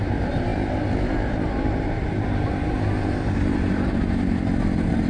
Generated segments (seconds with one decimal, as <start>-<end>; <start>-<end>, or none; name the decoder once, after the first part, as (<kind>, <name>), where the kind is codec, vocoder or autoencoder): 0.0-5.1 (vocoder, BigVGAN v2)